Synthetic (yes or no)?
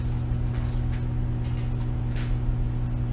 no